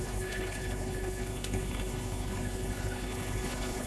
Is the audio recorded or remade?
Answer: remade